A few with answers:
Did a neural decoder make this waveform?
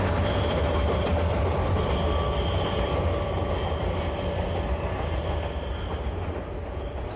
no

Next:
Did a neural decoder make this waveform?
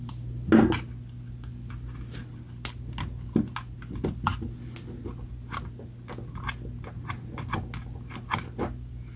no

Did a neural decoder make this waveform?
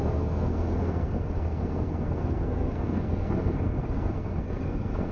yes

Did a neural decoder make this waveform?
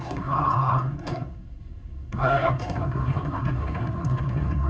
yes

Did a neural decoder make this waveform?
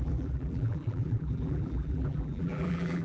yes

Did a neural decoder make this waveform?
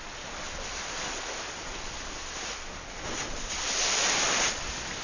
no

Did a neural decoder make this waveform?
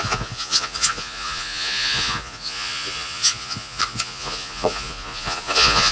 yes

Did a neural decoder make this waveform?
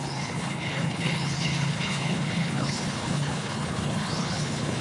yes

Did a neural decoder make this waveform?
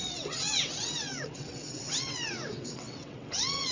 yes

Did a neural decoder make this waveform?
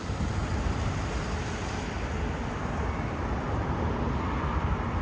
no